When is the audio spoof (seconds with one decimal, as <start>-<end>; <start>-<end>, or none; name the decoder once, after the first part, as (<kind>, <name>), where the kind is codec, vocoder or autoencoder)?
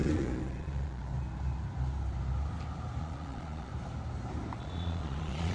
0.0-1.1 (vocoder, Vocos); 3.0-3.7; 4.6-5.5